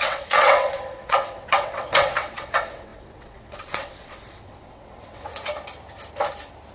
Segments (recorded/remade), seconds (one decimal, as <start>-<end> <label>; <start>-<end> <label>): 0.0-5.3 remade; 5.3-6.7 recorded